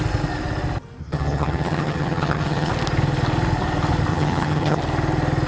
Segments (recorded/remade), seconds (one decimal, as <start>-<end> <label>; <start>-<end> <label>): 0.0-1.0 recorded; 1.0-2.7 remade; 2.7-4.1 recorded; 4.1-4.8 remade; 4.8-5.5 recorded